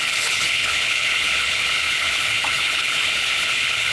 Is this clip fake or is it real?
fake